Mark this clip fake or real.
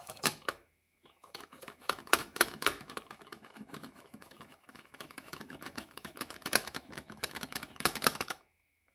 fake